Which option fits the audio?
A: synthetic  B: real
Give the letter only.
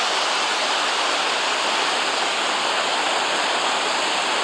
B